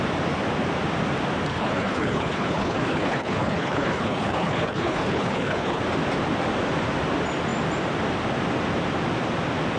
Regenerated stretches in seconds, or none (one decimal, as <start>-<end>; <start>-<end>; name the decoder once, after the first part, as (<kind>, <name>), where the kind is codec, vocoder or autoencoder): 1.5-5.8 (codec, HILCodec)